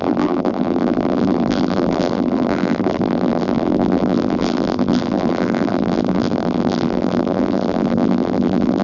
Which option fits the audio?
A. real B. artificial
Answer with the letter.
B